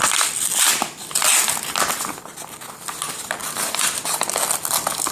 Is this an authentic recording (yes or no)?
yes